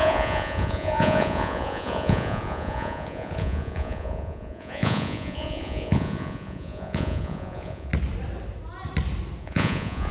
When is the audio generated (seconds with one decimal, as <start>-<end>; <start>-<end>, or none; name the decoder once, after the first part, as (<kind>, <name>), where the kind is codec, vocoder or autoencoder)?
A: 0.0-7.9 (vocoder, Vocos); 9.4-10.1